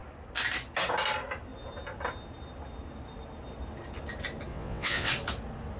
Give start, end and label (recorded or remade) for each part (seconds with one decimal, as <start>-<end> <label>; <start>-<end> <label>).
0.0-4.5 recorded; 4.5-5.1 remade; 5.1-5.8 recorded